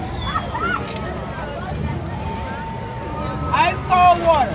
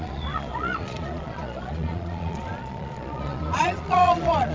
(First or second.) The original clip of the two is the first